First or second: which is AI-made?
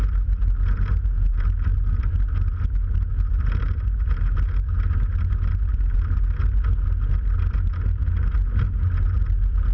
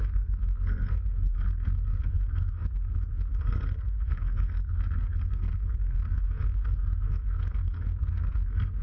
second